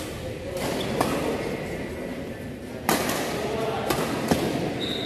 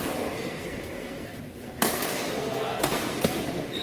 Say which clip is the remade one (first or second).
second